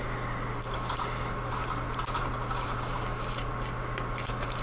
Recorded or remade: recorded